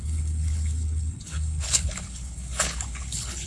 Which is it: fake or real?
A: fake